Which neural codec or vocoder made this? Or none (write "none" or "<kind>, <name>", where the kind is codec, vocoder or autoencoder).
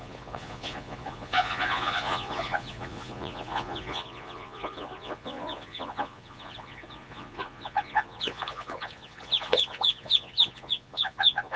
vocoder, Vocos